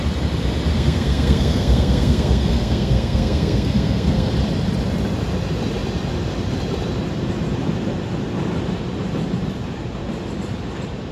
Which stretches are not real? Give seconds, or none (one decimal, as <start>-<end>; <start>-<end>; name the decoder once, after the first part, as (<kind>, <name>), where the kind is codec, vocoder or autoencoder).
0.7-4.3 (codec, SNAC)